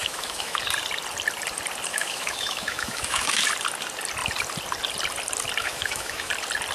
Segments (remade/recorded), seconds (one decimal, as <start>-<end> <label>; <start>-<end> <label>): 0.0-0.6 remade; 0.6-1.9 recorded; 1.9-3.4 remade; 3.4-5.6 recorded; 5.6-6.3 remade; 6.3-6.7 recorded